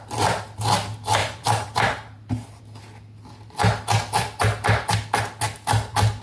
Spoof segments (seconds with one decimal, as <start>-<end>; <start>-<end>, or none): 1.2-2.6